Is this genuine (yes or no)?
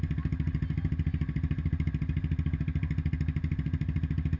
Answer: yes